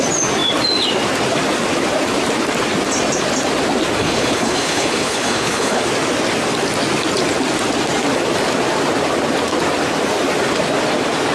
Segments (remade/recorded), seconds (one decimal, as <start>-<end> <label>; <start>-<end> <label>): 0.0-4.0 recorded; 4.0-5.8 remade; 5.8-11.3 recorded